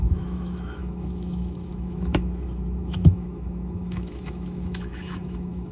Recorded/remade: remade